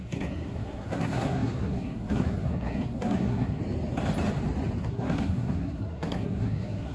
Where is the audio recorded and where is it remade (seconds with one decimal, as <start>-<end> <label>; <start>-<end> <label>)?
0.0-3.6 remade; 3.6-4.8 recorded; 4.8-6.9 remade

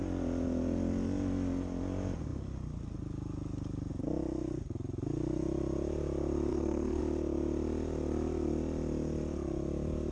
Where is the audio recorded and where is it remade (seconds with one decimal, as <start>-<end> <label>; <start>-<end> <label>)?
0.0-6.5 recorded; 6.5-7.0 remade; 7.0-10.1 recorded

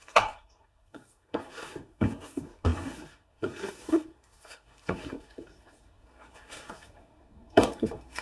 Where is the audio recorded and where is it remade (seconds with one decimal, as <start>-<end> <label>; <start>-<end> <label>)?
0.0-8.2 remade

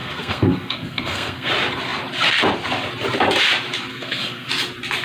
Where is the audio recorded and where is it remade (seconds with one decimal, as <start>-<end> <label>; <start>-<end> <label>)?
0.0-1.5 remade; 1.5-3.9 recorded; 3.9-4.5 remade; 4.5-5.0 recorded